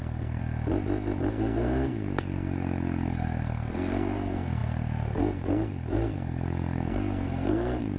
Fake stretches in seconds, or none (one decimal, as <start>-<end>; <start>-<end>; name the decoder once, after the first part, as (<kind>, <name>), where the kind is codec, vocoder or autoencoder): 0.0-0.4 (codec, SNAC); 1.3-8.0